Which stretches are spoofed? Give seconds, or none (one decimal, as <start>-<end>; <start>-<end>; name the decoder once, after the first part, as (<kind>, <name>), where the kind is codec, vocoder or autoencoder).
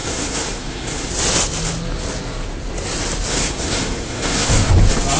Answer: 0.0-1.1 (codec, SNAC); 3.3-4.7